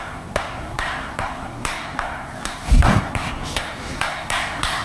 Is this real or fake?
fake